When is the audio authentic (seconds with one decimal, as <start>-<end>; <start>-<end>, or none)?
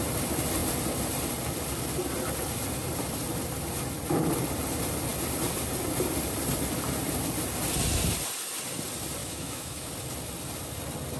0.0-9.2; 9.9-11.2